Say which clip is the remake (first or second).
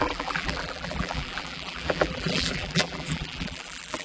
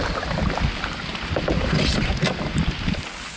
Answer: first